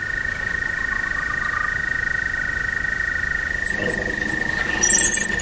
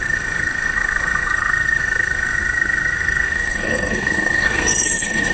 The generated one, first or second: second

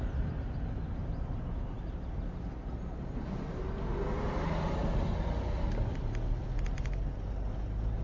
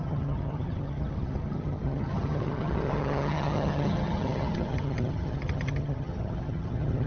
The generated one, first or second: second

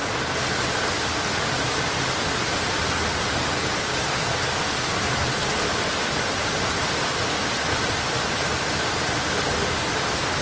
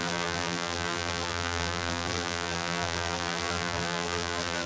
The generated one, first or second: second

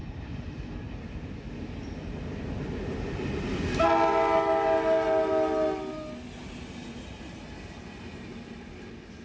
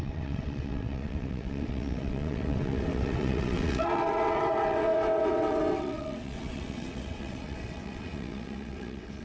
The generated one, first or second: second